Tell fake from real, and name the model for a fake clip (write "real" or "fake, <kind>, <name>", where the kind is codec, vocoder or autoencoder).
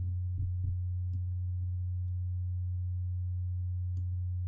real